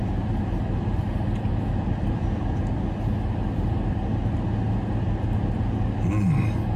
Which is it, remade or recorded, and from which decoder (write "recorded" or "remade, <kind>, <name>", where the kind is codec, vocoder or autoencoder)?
recorded